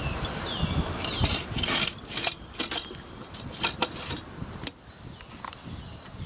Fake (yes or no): no